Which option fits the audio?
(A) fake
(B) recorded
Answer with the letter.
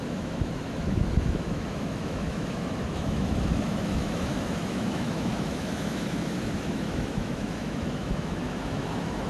A